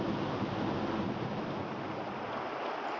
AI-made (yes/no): no